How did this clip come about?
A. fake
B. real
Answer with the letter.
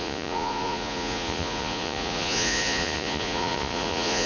A